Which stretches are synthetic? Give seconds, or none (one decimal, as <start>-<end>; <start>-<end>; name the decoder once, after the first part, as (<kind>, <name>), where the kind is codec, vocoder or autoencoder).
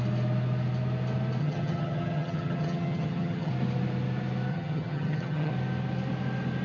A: 1.4-3.5 (vocoder, HiFi-GAN); 4.5-5.5